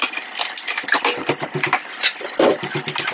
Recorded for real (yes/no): yes